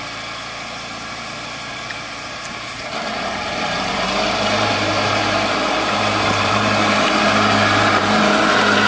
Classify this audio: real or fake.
fake